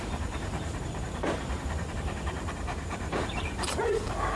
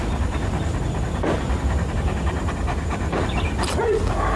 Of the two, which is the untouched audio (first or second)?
second